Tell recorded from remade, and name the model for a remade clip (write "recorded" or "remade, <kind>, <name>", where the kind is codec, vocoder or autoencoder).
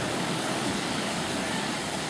remade, codec, DAC